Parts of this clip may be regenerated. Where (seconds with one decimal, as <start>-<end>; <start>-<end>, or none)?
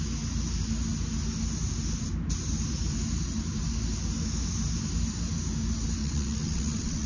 6.0-7.1